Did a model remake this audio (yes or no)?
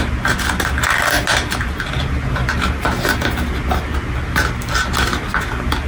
no